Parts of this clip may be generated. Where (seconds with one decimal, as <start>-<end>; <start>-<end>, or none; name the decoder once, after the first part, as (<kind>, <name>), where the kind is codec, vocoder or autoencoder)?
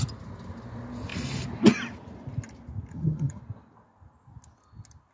2.9-3.4 (vocoder, HiFi-GAN)